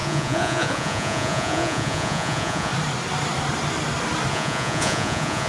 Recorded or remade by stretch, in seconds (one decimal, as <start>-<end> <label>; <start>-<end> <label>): 0.0-2.7 remade; 2.7-4.3 recorded; 4.3-5.5 remade